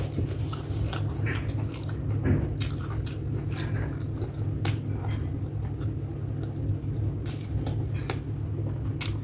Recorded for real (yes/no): yes